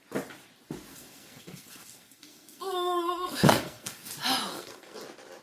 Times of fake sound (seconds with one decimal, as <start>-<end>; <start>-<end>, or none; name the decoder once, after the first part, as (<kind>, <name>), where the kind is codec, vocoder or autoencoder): 0.9-4.1 (codec, SNAC); 4.5-5.0